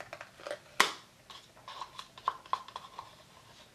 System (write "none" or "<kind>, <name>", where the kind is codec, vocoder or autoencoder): none